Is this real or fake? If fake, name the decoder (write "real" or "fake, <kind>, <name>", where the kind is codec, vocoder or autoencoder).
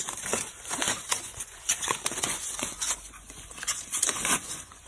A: fake, vocoder, Vocos